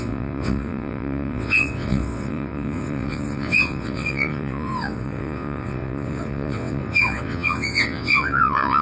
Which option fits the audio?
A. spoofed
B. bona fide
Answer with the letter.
A